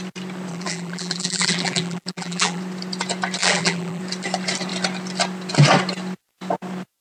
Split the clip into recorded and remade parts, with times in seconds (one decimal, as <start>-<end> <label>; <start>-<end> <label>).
0.0-0.5 recorded; 0.5-2.6 remade; 2.6-3.4 recorded; 3.4-4.0 remade; 4.0-7.0 recorded